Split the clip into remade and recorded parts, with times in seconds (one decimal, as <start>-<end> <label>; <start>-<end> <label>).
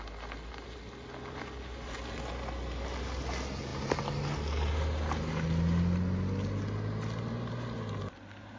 0.0-8.6 recorded